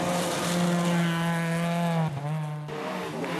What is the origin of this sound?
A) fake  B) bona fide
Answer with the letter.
B